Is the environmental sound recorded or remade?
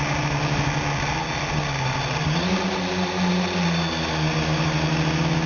recorded